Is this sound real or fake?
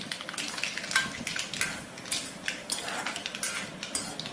real